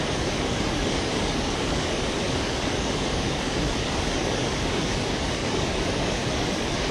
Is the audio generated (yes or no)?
yes